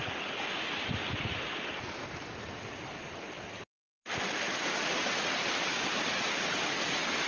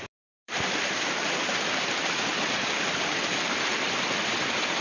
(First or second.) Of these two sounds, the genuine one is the first